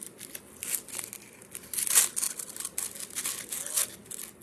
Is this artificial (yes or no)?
no